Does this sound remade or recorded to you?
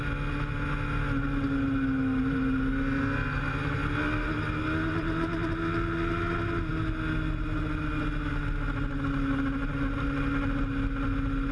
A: recorded